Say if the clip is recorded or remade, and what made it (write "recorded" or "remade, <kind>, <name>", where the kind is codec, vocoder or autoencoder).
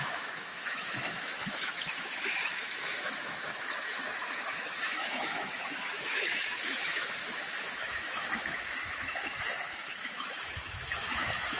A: remade, autoencoder, DAC-VAE